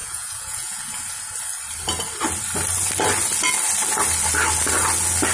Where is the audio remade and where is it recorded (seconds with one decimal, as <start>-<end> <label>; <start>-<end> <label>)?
0.0-0.8 remade; 0.8-5.3 recorded